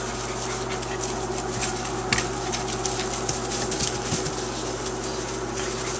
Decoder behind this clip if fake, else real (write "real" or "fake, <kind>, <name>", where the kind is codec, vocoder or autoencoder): real